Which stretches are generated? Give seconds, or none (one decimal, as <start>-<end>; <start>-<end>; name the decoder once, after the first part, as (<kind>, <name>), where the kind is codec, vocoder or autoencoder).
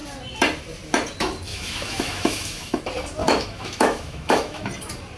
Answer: 1.5-2.8 (autoencoder, DAC-VAE); 3.2-4.7